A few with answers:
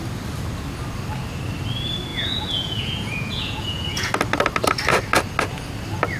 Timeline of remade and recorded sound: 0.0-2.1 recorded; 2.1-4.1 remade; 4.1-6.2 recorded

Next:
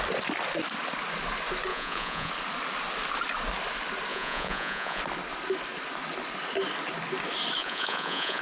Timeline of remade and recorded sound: 0.0-1.7 recorded; 1.7-2.3 remade; 2.3-4.1 recorded; 4.1-5.0 remade; 5.0-7.6 recorded; 7.6-8.4 remade

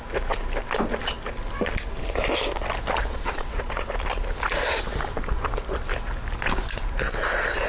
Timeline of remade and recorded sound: 0.0-3.1 recorded; 3.1-3.9 remade; 3.9-7.7 recorded

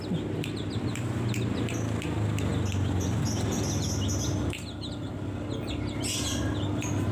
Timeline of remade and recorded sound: 0.0-7.1 recorded

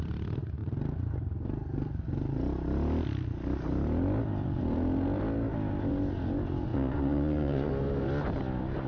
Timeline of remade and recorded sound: 0.0-6.7 recorded; 6.7-7.7 remade; 7.7-8.9 recorded

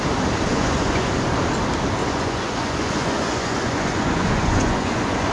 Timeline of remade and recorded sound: 0.0-0.5 recorded; 0.5-1.1 remade; 1.1-2.0 recorded; 2.0-5.3 remade

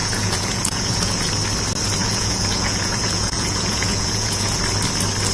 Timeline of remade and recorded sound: 0.0-1.3 remade; 1.3-2.0 recorded; 2.0-4.6 remade; 4.6-5.3 recorded

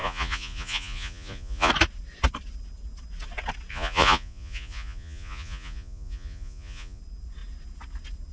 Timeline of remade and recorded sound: 0.0-1.7 remade; 1.7-3.7 recorded; 3.7-7.0 remade; 7.0-8.3 recorded